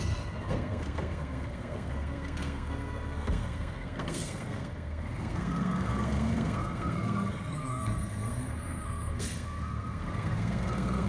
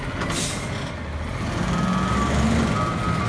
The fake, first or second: first